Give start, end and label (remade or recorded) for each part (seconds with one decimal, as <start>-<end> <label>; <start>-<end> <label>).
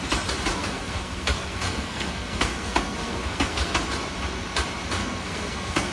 0.0-0.5 recorded; 0.5-3.8 remade; 3.8-5.0 recorded; 5.0-5.9 remade